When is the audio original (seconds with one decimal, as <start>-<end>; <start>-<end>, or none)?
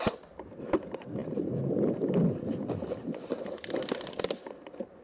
0.0-5.0